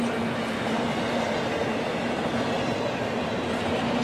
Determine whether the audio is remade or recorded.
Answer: recorded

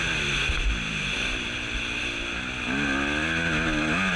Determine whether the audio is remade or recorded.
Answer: recorded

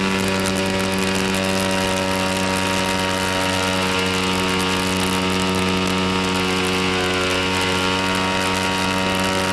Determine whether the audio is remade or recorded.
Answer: recorded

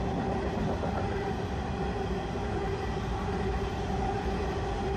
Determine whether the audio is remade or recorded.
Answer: recorded